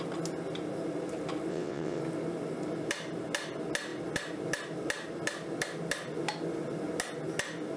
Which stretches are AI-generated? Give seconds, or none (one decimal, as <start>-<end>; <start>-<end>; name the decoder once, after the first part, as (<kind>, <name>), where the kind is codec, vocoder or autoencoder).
1.5-2.0 (vocoder, WaveNeXt)